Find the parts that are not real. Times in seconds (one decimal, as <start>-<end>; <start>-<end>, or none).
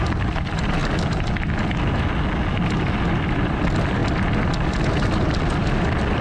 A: 0.0-0.8; 3.1-4.0; 5.0-6.2